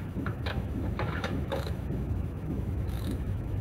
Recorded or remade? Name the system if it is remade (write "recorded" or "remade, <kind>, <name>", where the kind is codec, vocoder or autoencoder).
remade, autoencoder, DAC-VAE